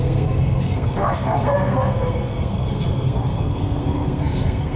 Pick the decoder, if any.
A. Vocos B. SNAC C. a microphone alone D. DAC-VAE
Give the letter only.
B